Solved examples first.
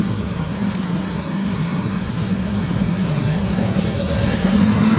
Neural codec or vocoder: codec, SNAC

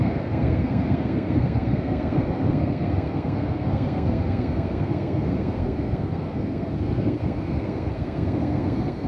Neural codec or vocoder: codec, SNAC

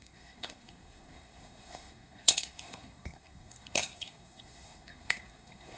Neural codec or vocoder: codec, SNAC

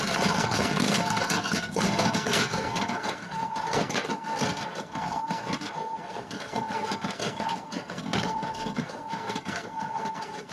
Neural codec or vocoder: codec, SNAC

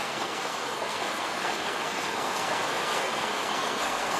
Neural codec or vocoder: codec, SNAC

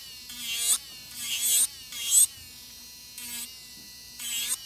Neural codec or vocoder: none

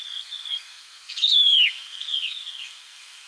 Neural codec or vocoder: codec, SNAC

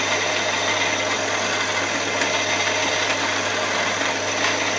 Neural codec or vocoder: none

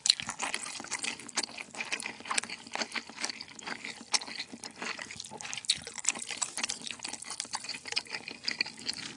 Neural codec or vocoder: none